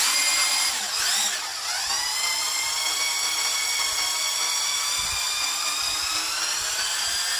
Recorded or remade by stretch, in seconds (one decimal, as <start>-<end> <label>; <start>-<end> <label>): 0.0-7.4 recorded